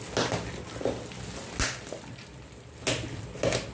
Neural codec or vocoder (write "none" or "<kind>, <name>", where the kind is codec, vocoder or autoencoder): none